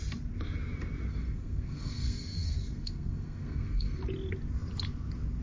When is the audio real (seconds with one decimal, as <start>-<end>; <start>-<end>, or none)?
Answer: 0.0-1.1; 4.0-5.4